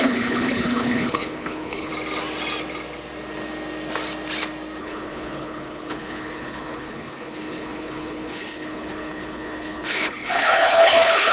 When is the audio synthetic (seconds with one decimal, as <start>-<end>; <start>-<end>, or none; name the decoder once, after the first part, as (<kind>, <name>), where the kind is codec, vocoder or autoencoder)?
0.0-1.9 (codec, HILCodec); 4.8-11.3